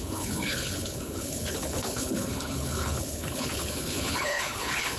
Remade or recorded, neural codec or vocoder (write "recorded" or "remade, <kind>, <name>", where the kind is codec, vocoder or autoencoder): remade, codec, HILCodec